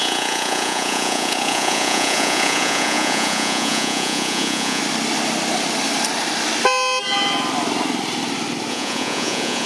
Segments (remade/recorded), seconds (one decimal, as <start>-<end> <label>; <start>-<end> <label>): 0.0-4.8 remade; 4.8-8.7 recorded; 8.7-9.7 remade